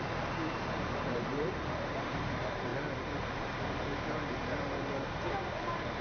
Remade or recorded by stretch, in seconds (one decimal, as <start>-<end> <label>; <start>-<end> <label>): 0.0-2.7 remade; 2.7-3.4 recorded; 3.4-3.9 remade; 3.9-5.3 recorded; 5.3-6.0 remade